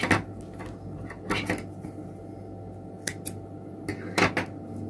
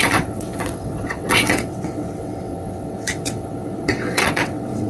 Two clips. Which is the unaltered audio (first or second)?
first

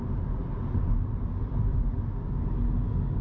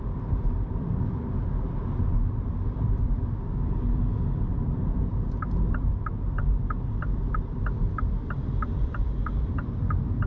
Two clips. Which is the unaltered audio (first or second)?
first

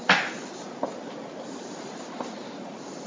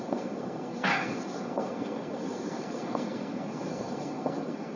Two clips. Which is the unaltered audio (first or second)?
first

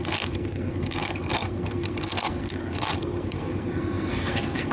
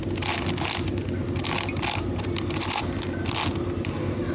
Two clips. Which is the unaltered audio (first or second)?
second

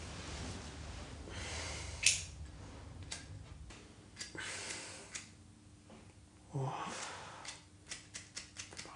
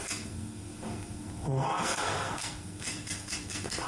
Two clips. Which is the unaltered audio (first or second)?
first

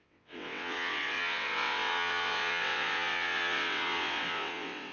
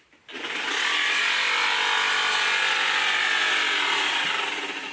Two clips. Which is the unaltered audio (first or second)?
second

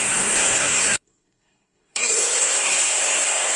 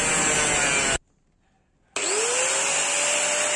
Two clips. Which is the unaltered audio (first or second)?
second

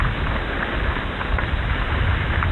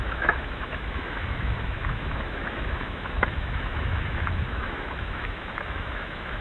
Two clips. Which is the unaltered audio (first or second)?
first